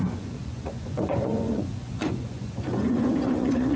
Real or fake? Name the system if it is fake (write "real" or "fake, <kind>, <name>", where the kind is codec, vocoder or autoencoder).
fake, vocoder, Vocos